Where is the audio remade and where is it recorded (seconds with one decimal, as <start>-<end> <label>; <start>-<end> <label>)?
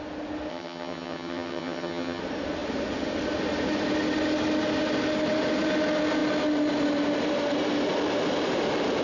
0.0-0.5 recorded; 0.5-2.2 remade; 2.2-9.0 recorded